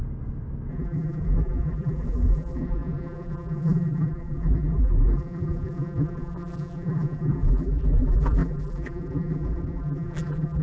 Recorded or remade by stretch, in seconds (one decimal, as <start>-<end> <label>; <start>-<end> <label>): 0.0-0.7 recorded; 0.7-10.6 remade